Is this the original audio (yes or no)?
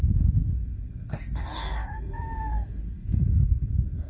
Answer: no